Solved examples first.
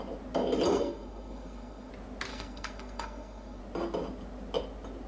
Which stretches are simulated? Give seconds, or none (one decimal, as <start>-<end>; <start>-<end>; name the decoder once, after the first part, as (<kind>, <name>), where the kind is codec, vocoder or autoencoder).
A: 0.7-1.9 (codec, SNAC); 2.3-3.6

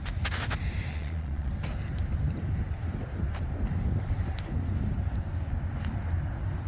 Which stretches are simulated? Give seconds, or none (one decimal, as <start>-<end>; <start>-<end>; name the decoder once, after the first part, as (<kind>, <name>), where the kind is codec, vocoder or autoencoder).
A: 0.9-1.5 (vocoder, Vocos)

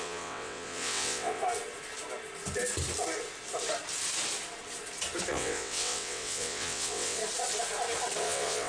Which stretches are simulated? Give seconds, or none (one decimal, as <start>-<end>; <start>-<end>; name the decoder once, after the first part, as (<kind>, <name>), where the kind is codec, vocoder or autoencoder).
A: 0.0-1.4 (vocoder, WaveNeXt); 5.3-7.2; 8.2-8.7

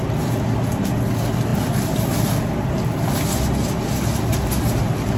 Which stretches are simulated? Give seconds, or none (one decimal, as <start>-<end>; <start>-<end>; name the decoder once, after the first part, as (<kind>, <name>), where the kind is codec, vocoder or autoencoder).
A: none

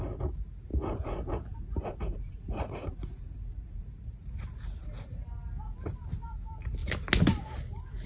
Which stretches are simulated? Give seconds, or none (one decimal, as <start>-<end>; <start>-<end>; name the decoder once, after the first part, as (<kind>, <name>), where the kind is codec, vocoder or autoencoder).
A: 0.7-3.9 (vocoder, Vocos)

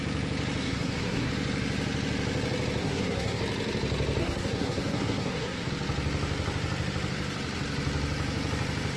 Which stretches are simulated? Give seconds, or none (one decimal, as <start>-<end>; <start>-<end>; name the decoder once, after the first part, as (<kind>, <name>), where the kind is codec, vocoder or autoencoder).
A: 0.6-1.3 (codec, SNAC); 2.8-3.4; 4.2-5.7

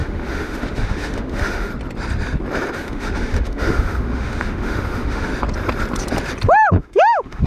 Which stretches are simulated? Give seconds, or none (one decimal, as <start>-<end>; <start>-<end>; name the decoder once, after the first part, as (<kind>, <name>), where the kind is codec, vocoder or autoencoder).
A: 0.0-1.7 (autoencoder, DAC-VAE); 2.7-5.3; 6.7-7.5